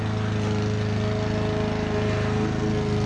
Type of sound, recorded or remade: recorded